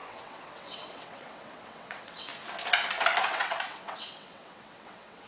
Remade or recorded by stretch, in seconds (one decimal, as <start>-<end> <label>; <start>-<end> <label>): 0.0-2.3 remade; 2.3-3.3 recorded; 3.3-5.3 remade

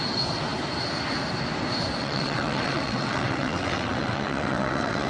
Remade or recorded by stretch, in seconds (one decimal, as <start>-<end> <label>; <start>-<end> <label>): 0.0-2.0 recorded; 2.0-5.1 remade

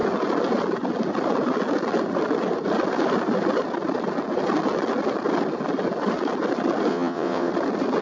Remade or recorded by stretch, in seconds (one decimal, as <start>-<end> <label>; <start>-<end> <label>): 0.0-6.9 recorded; 6.9-7.5 remade; 7.5-8.0 recorded